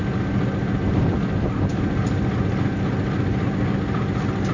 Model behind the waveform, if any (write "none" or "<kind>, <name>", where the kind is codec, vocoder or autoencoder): none